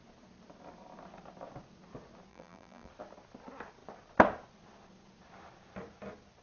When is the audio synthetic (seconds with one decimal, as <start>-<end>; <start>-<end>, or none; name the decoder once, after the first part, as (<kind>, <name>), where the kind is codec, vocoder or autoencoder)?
2.3-2.9 (vocoder, BigVGAN v2)